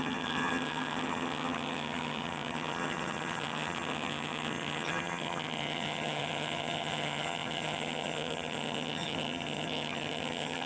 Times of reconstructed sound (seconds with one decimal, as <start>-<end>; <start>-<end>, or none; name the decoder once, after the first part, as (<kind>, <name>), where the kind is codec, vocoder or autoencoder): 0.0-10.7 (vocoder, HiFi-GAN)